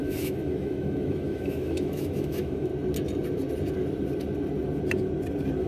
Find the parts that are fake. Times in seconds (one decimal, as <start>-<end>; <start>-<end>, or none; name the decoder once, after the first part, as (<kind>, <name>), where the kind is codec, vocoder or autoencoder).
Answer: 0.0-2.7 (autoencoder, DAC-VAE)